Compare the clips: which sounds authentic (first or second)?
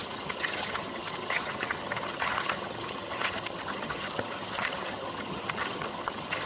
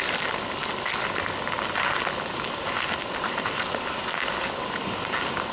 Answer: second